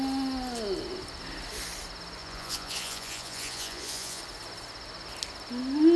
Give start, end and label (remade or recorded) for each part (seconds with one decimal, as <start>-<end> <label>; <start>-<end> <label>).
0.0-2.2 recorded; 2.2-4.2 remade; 4.2-6.0 recorded